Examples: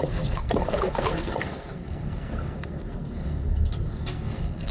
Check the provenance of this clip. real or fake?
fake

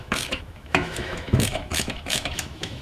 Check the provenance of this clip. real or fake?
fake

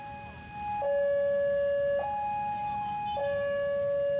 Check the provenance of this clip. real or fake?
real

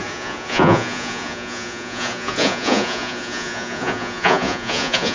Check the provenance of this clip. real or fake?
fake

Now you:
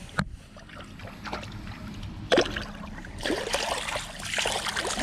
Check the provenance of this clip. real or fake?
real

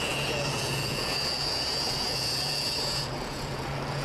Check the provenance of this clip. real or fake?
fake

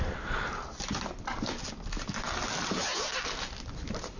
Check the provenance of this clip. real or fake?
real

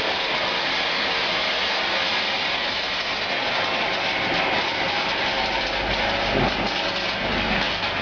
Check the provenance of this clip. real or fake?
real